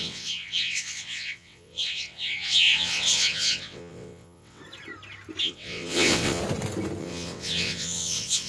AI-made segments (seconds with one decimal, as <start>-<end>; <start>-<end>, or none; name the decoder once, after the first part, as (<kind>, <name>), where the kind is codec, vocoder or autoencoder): 0.0-4.6 (vocoder, WaveNeXt); 5.4-6.4; 7.0-8.5